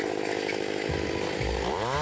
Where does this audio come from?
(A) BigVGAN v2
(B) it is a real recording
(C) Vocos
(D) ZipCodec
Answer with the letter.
B